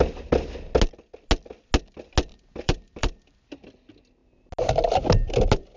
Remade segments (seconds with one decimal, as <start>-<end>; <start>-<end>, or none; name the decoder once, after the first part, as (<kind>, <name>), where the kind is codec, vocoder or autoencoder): 2.3-3.4 (vocoder, BigVGAN v2)